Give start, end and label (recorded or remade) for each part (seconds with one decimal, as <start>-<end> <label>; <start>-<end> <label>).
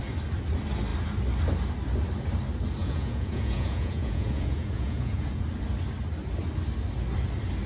0.0-2.8 recorded; 2.8-5.4 remade; 5.4-7.7 recorded